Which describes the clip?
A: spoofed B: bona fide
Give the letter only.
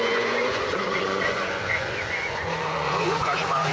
A